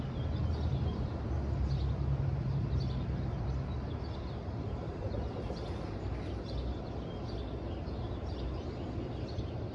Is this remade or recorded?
recorded